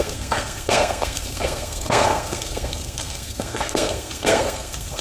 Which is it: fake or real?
fake